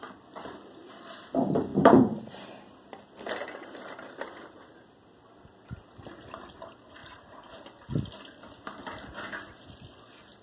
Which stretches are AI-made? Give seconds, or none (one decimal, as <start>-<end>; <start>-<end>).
1.7-2.5; 7.0-7.9